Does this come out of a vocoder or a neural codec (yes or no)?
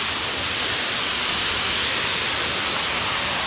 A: no